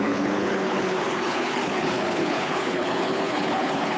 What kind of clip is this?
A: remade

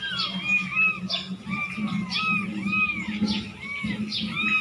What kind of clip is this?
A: recorded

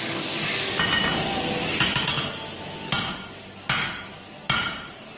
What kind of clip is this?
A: recorded